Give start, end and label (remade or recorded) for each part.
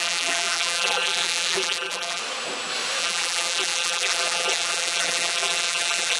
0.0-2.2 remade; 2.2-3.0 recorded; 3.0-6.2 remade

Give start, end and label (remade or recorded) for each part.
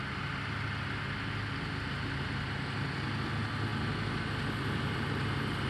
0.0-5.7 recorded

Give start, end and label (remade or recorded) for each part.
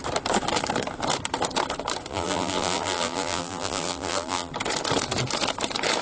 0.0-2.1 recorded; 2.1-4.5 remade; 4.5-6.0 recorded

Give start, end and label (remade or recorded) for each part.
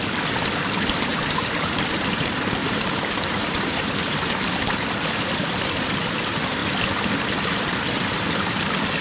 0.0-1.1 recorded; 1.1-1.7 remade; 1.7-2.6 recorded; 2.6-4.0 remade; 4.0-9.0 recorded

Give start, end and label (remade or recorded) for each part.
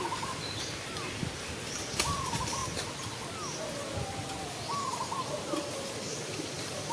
0.0-2.6 remade; 2.6-5.3 recorded; 5.3-6.9 remade